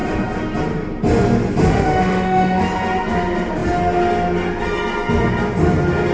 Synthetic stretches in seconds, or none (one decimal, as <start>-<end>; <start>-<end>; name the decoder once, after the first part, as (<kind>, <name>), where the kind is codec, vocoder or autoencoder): 1.7-2.6 (autoencoder, DAC-VAE)